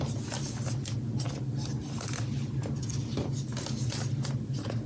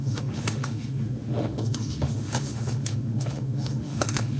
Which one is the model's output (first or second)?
second